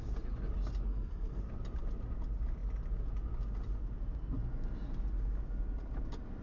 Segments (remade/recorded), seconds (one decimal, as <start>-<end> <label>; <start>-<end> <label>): 0.0-0.9 recorded; 0.9-1.4 remade; 1.4-6.4 recorded